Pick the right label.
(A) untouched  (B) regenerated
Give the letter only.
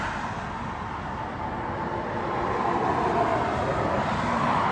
A